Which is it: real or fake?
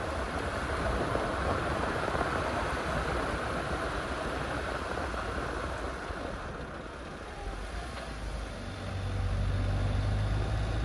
real